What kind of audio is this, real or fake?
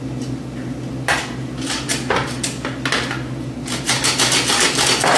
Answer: real